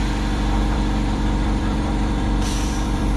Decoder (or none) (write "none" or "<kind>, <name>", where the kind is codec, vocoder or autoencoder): vocoder, BigVGAN v2